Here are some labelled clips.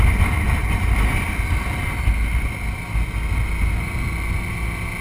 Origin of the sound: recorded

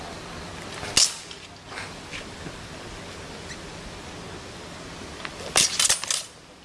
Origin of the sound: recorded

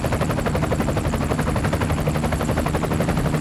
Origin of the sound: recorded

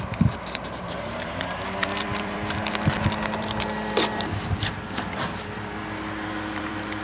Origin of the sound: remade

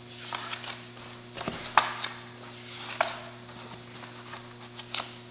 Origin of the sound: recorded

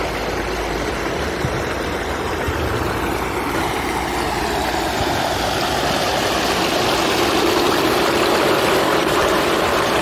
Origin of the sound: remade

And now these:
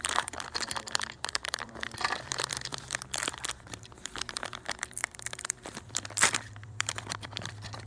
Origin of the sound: remade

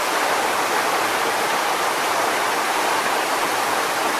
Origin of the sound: remade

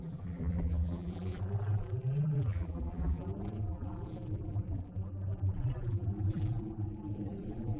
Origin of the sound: remade